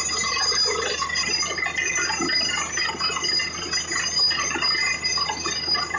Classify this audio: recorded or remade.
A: recorded